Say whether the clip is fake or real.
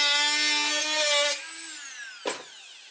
real